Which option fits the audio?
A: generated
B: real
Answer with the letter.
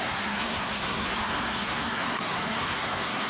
A